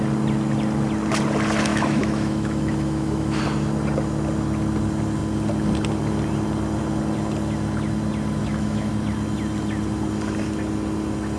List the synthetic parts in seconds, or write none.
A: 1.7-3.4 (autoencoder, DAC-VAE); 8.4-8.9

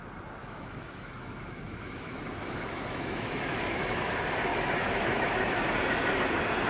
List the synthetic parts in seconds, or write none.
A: 0.4-4.1 (autoencoder, DAC-VAE); 4.5-5.6

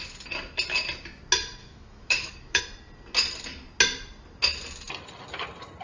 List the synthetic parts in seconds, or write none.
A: 1.6-2.6 (autoencoder, DAC-VAE)

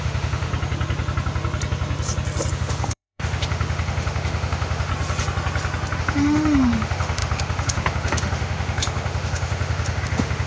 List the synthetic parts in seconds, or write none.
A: 0.0-0.5 (autoencoder, DAC-VAE); 2.5-4.9; 6.0-10.5

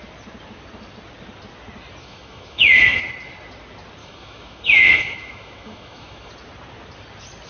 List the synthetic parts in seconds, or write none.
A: 2.0-3.0 (autoencoder, DAC-VAE); 4.0-6.3